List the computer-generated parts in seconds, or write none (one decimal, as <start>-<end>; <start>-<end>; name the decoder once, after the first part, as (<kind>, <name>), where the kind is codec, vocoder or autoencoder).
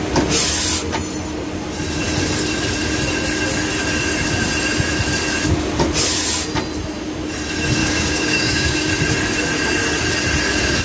7.8-8.9 (codec, DAC)